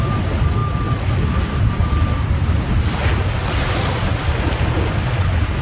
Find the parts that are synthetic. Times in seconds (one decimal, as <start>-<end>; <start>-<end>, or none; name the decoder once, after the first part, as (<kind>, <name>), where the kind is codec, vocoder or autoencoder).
none